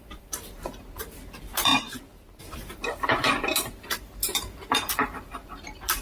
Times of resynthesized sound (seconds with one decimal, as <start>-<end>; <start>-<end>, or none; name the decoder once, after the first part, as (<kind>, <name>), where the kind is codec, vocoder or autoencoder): 0.0-6.0 (vocoder, BigVGAN v2)